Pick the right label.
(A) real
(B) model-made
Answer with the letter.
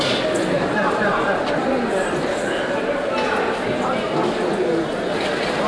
A